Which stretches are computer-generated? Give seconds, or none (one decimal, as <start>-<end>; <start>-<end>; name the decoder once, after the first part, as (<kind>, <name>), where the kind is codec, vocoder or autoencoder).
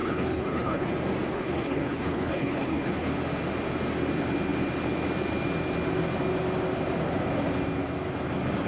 0.0-0.9 (codec, HILCodec); 1.3-3.1